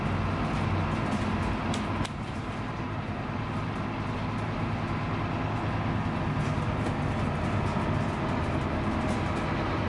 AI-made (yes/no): no